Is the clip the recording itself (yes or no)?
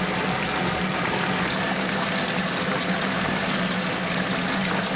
yes